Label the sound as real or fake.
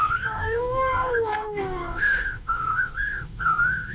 fake